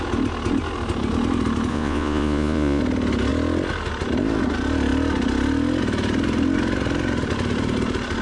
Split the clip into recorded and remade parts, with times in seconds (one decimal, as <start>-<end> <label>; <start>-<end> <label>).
0.0-1.7 recorded; 1.7-2.8 remade; 2.8-8.2 recorded